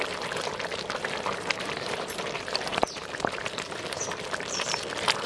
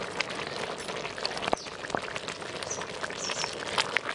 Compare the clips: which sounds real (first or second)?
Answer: second